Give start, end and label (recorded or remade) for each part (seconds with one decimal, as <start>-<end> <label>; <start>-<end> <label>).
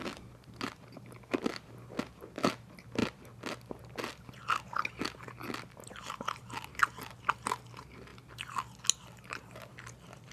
0.0-10.3 recorded